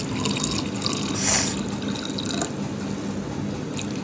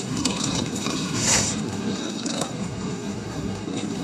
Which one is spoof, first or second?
second